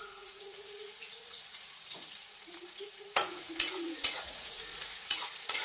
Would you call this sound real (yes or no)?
no